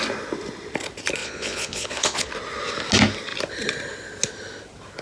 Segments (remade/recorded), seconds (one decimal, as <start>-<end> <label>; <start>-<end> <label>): 0.0-1.2 recorded; 1.2-2.3 remade; 2.3-5.0 recorded